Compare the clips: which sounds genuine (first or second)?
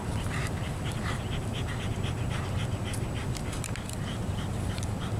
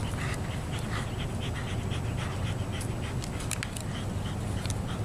second